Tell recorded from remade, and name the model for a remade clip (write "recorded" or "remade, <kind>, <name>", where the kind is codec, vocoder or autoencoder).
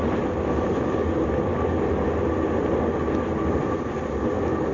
recorded